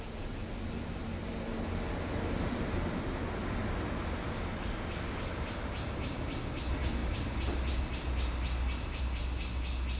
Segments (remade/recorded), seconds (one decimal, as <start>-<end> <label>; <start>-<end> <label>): 0.0-10.0 recorded

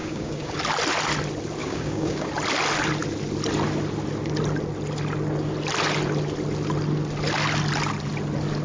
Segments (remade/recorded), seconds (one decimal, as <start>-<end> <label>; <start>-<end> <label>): 0.0-0.6 remade; 0.6-1.6 recorded; 1.6-2.3 remade; 2.3-8.6 recorded

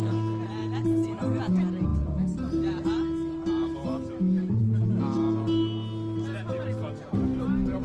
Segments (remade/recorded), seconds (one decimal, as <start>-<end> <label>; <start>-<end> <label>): 0.0-0.6 recorded; 0.6-1.4 remade; 1.4-1.9 recorded; 1.9-5.0 remade; 5.0-7.8 recorded

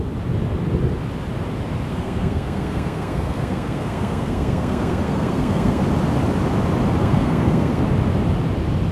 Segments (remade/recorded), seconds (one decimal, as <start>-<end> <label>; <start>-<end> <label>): 0.0-1.9 recorded; 1.9-5.8 remade; 5.8-7.0 recorded; 7.0-7.8 remade; 7.8-8.9 recorded